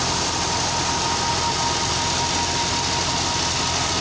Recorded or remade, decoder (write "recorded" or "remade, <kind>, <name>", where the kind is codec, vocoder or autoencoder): recorded